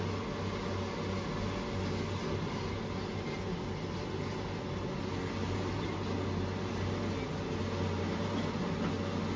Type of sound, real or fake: real